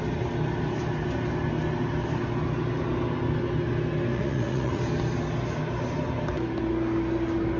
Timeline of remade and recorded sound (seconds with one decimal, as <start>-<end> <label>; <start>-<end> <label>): 0.0-4.1 recorded; 4.1-4.8 remade; 4.8-7.6 recorded